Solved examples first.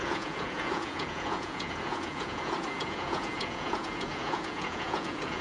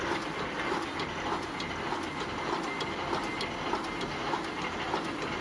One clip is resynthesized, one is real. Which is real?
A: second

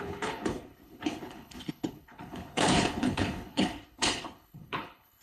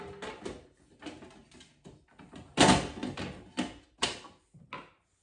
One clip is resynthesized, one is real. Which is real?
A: second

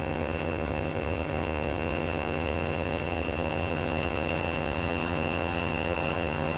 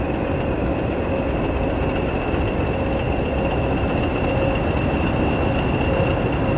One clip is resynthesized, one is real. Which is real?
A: second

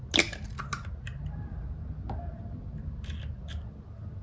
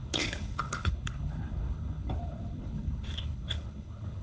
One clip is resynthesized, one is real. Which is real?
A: first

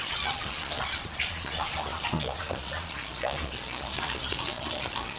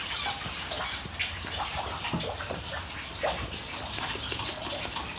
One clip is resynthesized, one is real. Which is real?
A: second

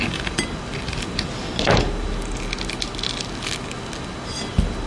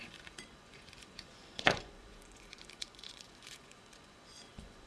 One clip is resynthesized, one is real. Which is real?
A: first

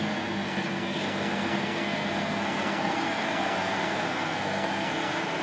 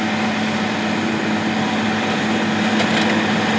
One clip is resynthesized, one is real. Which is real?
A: second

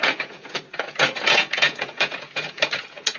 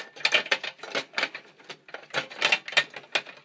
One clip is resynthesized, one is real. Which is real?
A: second